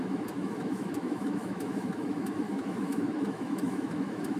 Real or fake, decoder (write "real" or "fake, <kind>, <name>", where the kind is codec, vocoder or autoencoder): fake, autoencoder, DAC-VAE